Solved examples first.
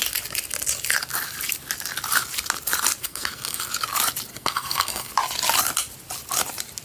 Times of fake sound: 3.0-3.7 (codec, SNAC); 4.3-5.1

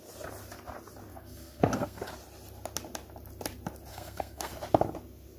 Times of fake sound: 1.1-2.0 (codec, SNAC); 3.9-4.5

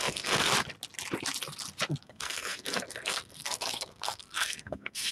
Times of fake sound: 0.0-0.5 (codec, SNAC); 2.0-5.1

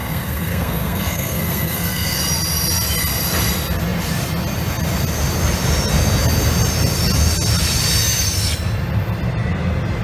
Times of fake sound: 0.0-2.2 (codec, SNAC)

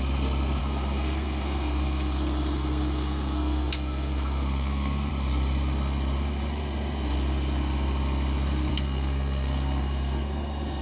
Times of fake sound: 0.6-5.1 (codec, SNAC); 8.7-10.8